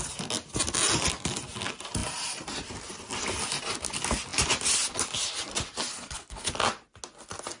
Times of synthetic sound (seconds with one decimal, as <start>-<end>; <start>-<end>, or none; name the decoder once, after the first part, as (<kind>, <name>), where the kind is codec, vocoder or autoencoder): 5.9-6.5 (codec, HILCodec)